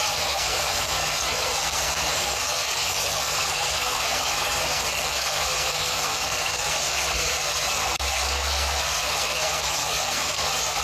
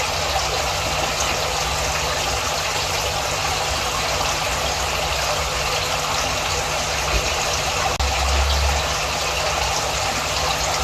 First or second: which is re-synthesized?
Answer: first